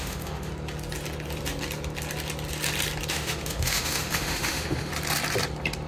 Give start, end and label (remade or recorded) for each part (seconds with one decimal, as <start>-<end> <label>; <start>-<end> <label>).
0.0-0.5 remade; 0.5-3.1 recorded; 3.1-4.9 remade; 4.9-5.9 recorded